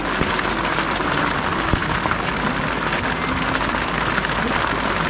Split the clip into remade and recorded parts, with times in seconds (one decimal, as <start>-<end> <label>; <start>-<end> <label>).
0.0-5.1 recorded